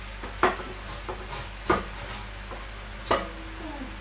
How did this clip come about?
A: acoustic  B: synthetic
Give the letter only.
A